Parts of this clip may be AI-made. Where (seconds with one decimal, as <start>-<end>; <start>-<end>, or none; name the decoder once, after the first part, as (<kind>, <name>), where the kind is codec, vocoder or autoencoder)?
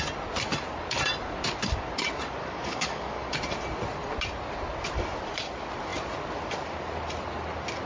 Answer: 2.4-3.3 (codec, DAC)